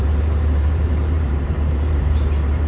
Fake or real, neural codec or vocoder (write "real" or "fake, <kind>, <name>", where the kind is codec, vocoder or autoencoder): fake, vocoder, BigVGAN v2